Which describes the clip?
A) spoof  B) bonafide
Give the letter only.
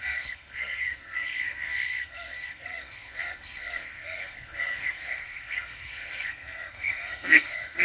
A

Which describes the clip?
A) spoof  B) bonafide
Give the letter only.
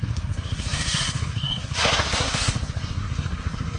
A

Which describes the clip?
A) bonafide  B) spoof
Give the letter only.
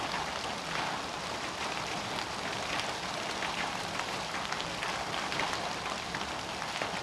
A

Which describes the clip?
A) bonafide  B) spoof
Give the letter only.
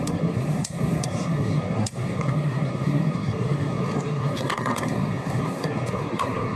B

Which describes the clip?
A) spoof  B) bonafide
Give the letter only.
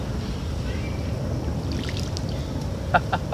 B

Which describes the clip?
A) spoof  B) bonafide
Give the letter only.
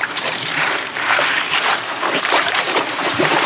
A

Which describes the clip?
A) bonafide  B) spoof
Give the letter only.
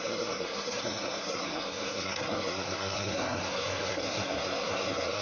B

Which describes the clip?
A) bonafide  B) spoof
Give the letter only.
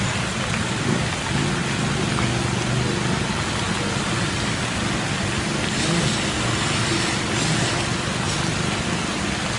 A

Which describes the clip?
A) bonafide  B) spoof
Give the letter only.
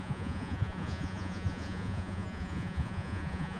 B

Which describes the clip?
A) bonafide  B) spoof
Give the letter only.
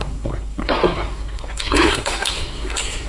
B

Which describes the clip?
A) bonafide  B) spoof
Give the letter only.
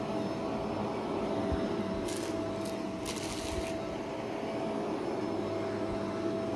A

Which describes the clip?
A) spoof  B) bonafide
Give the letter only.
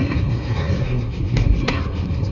A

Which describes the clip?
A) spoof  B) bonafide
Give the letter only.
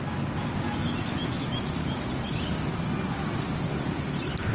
B